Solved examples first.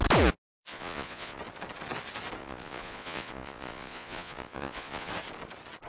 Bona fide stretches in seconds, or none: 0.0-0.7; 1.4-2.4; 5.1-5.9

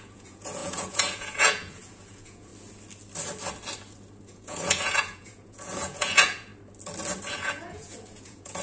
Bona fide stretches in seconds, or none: 2.5-4.3; 6.5-7.3

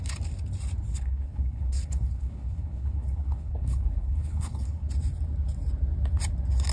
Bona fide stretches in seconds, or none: 0.0-0.9; 4.9-6.7

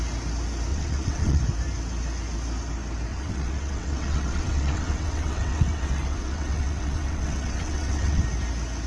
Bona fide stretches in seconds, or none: 0.0-0.7; 1.4-3.1; 8.2-8.9

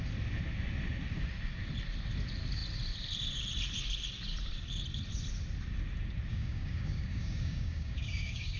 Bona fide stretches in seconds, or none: 0.0-6.3

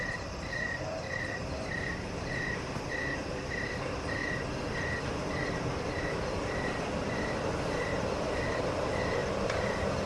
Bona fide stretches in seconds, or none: 4.2-5.1

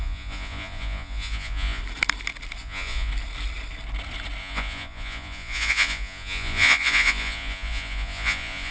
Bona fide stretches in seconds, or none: 1.8-2.6; 3.1-4.4